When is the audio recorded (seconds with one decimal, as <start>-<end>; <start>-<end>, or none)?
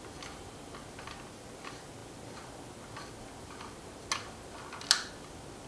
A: 0.0-5.7